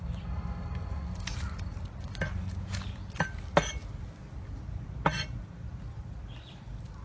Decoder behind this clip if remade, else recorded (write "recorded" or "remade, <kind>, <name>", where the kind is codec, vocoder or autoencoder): recorded